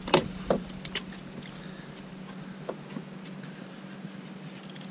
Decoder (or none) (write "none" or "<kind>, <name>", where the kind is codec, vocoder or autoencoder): none